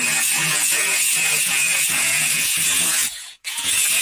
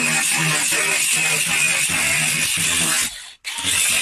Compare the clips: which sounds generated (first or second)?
first